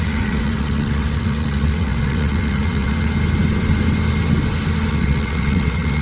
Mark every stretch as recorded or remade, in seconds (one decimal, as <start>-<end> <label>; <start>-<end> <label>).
0.0-3.1 remade; 3.1-4.9 recorded; 4.9-6.0 remade